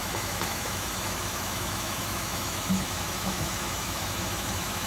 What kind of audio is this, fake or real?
fake